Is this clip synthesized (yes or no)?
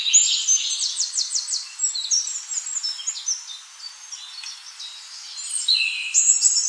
no